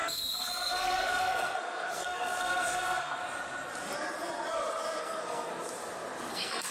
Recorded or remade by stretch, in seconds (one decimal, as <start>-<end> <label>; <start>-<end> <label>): 0.0-3.2 remade; 3.2-5.0 recorded; 5.0-5.5 remade; 5.5-6.3 recorded; 6.3-6.7 remade